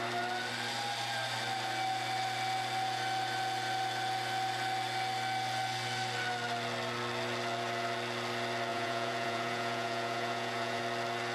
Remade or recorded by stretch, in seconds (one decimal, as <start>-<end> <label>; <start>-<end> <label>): 0.0-8.7 recorded; 8.7-10.8 remade; 10.8-11.3 recorded